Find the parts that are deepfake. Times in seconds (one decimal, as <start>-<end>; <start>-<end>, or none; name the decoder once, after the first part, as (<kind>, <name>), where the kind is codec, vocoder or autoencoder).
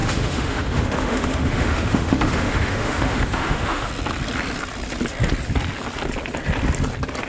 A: 0.0-3.9 (autoencoder, DAC-VAE)